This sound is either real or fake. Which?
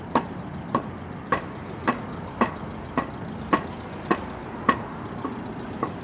real